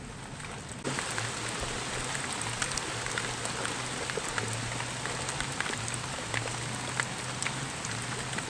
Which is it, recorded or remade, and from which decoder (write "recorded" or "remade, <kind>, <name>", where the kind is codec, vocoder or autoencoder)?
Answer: recorded